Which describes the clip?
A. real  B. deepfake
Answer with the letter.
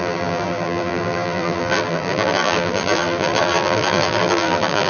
B